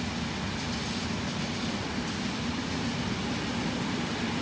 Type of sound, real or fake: real